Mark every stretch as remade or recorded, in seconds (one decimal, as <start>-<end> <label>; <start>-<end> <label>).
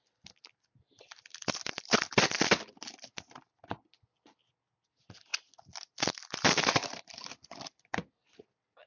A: 0.0-8.9 recorded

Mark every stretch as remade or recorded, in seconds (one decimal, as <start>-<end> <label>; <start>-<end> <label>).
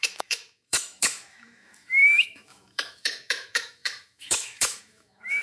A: 0.0-5.4 remade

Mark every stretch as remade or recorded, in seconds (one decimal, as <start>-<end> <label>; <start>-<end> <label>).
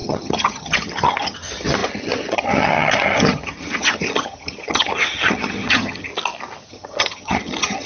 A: 0.0-6.1 remade; 6.1-6.7 recorded; 6.7-7.9 remade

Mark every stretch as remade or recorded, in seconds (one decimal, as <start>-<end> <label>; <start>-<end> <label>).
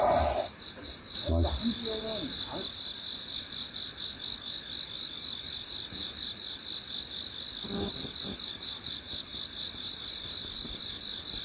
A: 0.0-11.4 recorded